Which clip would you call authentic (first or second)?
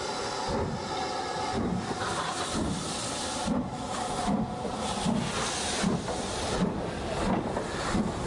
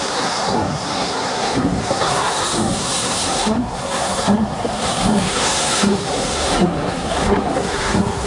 first